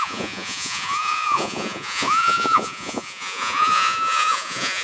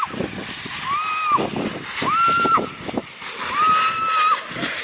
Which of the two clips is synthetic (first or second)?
first